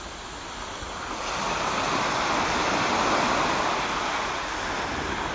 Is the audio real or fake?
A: real